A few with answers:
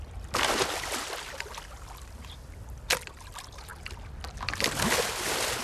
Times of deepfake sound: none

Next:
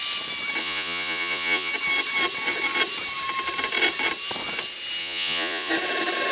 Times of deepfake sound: 0.6-1.7 (vocoder, Vocos); 5.0-5.7

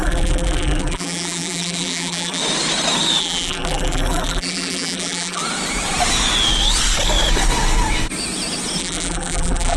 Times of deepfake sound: 0.0-2.4 (vocoder, BigVGAN v2); 3.2-5.4; 8.8-9.8